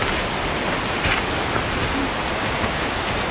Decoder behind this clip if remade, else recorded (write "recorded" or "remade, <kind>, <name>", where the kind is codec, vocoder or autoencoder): recorded